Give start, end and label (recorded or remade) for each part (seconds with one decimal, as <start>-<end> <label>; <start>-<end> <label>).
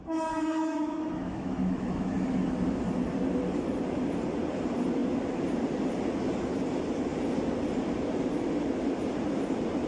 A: 0.0-2.2 remade; 2.2-9.9 recorded